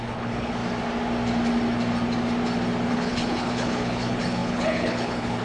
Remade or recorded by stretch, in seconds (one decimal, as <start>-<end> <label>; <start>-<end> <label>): 0.0-0.6 remade; 0.6-2.9 recorded; 2.9-5.4 remade